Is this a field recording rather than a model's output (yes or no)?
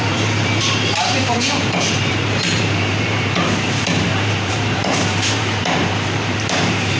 no